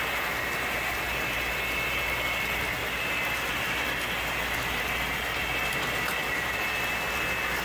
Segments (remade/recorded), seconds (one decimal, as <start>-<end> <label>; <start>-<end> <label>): 0.0-7.6 recorded